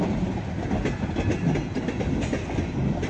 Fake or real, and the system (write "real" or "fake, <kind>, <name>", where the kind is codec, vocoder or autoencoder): real